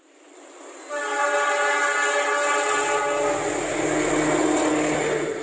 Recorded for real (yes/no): yes